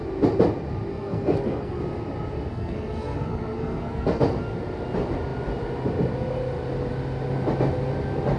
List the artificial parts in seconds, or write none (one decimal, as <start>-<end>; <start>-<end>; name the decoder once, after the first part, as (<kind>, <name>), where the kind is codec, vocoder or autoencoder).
0.9-1.8 (codec, SNAC); 2.5-4.2